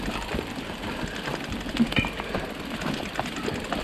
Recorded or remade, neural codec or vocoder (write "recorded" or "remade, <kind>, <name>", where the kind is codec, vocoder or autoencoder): remade, vocoder, BigVGAN v2